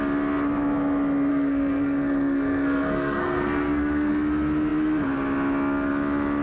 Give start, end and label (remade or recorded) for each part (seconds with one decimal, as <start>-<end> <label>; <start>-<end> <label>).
0.0-1.3 recorded; 1.3-4.1 remade; 4.1-6.4 recorded

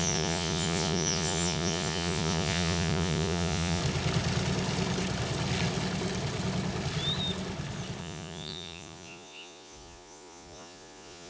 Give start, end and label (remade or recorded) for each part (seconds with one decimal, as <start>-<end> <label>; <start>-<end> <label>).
0.0-3.8 remade; 3.8-8.0 recorded; 8.0-11.3 remade